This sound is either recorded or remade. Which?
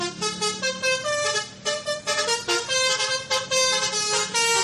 recorded